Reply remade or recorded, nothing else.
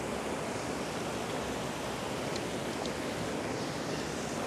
recorded